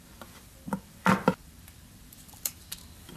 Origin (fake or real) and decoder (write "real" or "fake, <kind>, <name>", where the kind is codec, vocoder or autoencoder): fake, vocoder, BigVGAN v2